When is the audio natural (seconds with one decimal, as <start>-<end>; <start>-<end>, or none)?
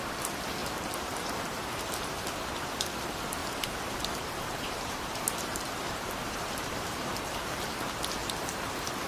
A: 0.0-0.6; 1.7-3.4; 7.5-8.2